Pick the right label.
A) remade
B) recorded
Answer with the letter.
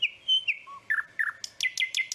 B